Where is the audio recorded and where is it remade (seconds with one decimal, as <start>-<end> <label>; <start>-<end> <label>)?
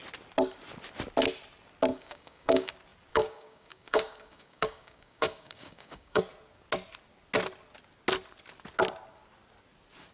0.0-1.9 recorded; 1.9-2.7 remade; 2.7-3.1 recorded; 3.1-6.2 remade; 6.2-10.1 recorded